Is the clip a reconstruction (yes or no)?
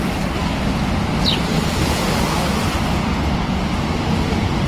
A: no